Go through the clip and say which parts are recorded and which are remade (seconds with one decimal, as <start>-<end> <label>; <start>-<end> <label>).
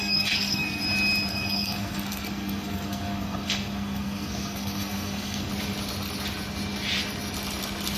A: 0.0-0.8 remade; 0.8-1.3 recorded; 1.3-5.5 remade; 5.5-8.0 recorded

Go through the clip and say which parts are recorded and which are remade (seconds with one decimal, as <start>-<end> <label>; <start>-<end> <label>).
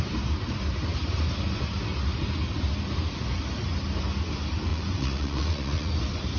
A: 0.0-4.7 recorded; 4.7-5.9 remade; 5.9-6.4 recorded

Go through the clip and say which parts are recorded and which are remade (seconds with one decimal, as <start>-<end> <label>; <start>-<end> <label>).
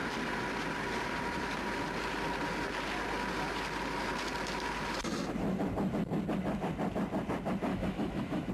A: 0.0-7.7 recorded; 7.7-8.5 remade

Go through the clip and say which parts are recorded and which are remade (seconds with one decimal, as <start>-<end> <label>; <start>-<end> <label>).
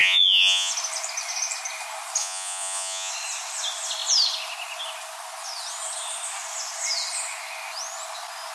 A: 0.0-0.7 remade; 0.7-2.2 recorded; 2.2-3.1 remade; 3.1-8.5 recorded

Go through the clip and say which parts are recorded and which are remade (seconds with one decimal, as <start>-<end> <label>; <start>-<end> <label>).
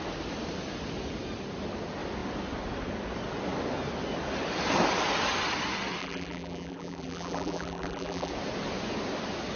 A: 0.0-6.0 recorded; 6.0-8.3 remade; 8.3-9.6 recorded